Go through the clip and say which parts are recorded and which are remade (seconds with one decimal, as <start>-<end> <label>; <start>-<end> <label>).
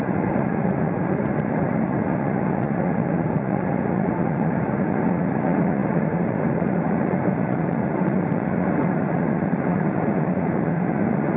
0.0-11.4 remade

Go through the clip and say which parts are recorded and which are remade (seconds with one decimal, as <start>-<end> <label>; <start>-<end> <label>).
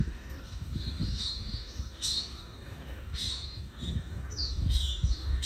0.0-5.5 remade